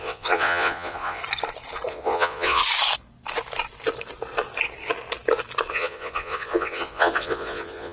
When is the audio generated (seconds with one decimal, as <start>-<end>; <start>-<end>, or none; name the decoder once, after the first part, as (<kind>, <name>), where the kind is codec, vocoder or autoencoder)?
0.0-1.2 (vocoder, Vocos); 1.9-2.6; 5.7-7.9